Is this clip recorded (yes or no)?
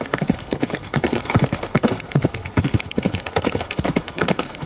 no